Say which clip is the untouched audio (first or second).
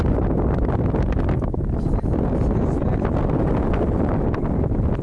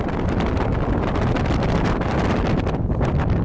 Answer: first